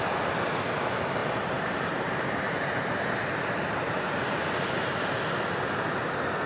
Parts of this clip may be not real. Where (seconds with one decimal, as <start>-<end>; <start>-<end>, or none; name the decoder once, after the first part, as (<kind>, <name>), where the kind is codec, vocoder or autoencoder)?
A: 1.2-5.1 (vocoder, BigVGAN v2)